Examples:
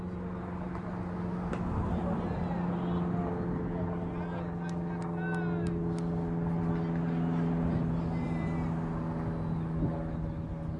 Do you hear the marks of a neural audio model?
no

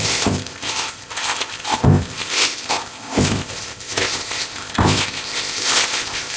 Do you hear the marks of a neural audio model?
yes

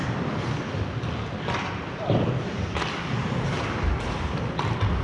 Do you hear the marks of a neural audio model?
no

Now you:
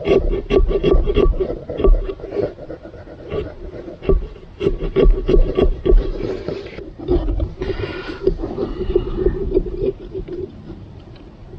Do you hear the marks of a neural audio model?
yes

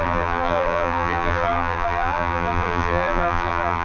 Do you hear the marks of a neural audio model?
yes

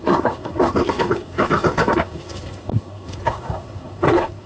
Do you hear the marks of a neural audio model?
yes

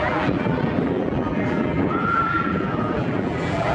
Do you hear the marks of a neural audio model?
yes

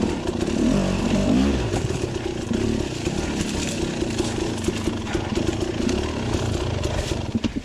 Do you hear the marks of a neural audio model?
no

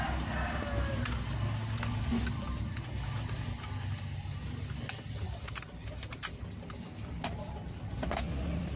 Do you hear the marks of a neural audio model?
no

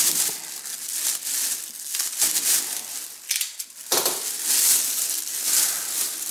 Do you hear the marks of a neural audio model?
no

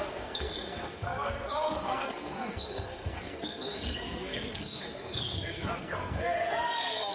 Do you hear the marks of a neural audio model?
yes